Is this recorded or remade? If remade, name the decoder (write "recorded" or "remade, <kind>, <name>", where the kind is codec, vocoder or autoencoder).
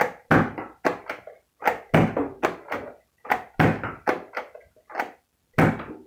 recorded